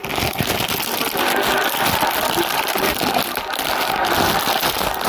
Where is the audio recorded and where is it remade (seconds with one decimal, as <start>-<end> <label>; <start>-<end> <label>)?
0.0-5.1 recorded

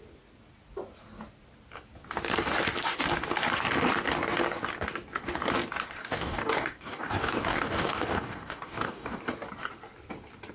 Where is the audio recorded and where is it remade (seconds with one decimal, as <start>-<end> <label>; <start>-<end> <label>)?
0.0-6.0 recorded; 6.0-9.2 remade; 9.2-10.5 recorded

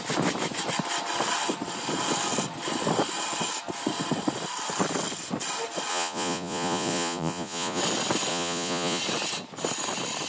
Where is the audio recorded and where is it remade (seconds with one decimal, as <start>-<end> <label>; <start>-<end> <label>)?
0.0-5.9 recorded; 5.9-7.8 remade; 7.8-8.3 recorded; 8.3-9.0 remade; 9.0-10.3 recorded

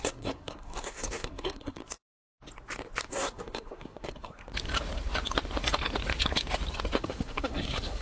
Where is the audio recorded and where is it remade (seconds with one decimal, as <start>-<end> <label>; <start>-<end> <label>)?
0.0-1.8 remade; 1.8-3.1 recorded; 3.1-4.4 remade; 4.4-7.0 recorded; 7.0-8.0 remade

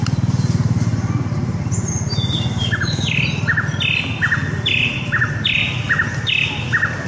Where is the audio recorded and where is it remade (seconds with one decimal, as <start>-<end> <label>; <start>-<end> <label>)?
0.0-7.1 recorded

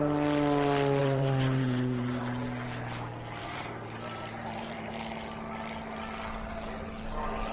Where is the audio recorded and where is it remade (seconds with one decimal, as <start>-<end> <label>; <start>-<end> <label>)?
0.0-1.0 recorded; 1.0-2.2 remade; 2.2-3.4 recorded; 3.4-4.9 remade; 4.9-7.5 recorded

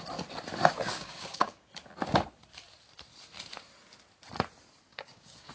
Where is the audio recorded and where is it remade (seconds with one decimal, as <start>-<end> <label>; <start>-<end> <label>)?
0.0-0.9 recorded; 0.9-1.7 remade; 1.7-4.9 recorded; 4.9-5.5 remade

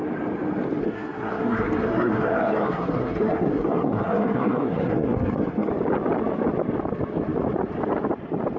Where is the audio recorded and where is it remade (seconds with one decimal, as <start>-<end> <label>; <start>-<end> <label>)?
0.0-0.8 recorded; 0.8-5.7 remade; 5.7-8.6 recorded